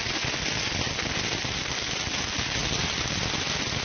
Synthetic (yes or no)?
no